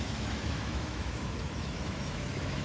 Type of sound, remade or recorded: remade